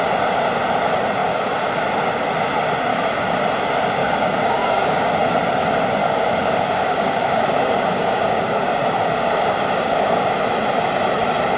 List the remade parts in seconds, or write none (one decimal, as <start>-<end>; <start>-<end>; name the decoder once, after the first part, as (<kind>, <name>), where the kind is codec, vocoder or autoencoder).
1.2-1.8 (codec, DAC); 2.9-3.4; 4.0-5.1; 6.0-10.3